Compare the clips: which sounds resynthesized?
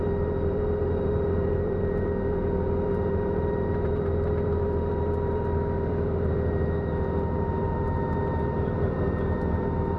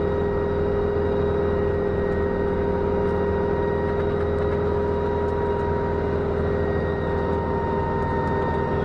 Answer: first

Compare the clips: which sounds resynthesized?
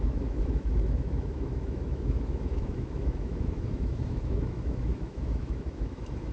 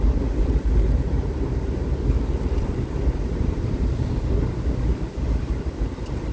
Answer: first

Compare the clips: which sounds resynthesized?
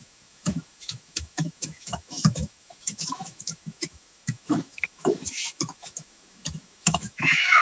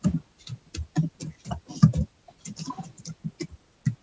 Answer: first